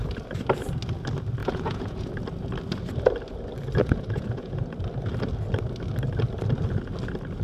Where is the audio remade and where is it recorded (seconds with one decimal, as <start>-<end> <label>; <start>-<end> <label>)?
0.0-1.4 recorded; 1.4-2.1 remade; 2.1-3.8 recorded; 3.8-4.6 remade; 4.6-7.4 recorded